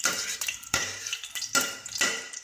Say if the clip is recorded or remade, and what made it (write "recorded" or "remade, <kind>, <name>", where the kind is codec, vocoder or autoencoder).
remade, vocoder, BigVGAN v2